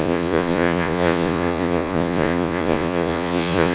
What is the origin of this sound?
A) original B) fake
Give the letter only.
B